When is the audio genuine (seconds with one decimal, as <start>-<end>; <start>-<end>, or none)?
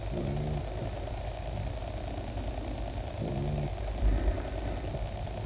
0.0-5.5